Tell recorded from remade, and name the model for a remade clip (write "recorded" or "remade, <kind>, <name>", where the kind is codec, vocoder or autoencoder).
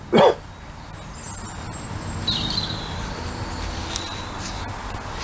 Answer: recorded